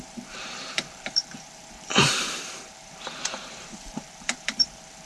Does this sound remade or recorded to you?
remade